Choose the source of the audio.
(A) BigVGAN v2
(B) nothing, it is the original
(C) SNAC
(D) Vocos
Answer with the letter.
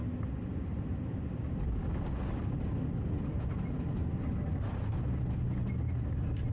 B